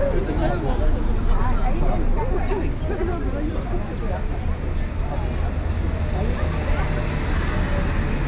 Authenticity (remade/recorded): recorded